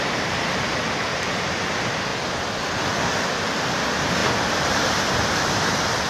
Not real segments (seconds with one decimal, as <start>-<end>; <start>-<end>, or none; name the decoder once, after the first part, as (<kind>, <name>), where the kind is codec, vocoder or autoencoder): 1.1-1.6 (vocoder, BigVGAN v2); 4.2-5.0